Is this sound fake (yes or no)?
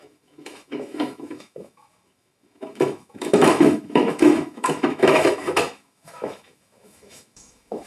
yes